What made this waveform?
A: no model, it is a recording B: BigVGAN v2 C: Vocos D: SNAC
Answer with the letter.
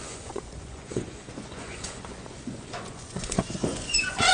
C